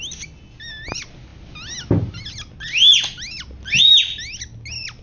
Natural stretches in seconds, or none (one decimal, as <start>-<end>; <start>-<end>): 0.0-5.0

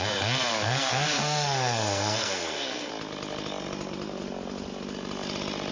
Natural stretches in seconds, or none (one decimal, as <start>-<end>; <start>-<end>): 0.0-0.5; 2.9-5.7